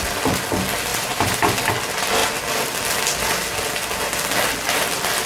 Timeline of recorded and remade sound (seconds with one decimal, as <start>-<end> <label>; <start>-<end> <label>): 0.0-0.9 recorded; 0.9-1.7 remade; 1.7-5.3 recorded

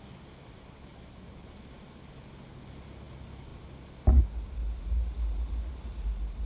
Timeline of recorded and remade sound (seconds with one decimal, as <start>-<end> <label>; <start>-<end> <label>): 0.0-0.9 recorded; 0.9-1.5 remade; 1.5-6.5 recorded